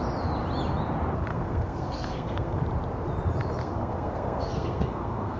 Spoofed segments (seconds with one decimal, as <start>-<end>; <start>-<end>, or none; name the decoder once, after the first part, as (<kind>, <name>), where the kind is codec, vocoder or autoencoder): 1.3-2.6 (codec, SNAC); 3.6-5.4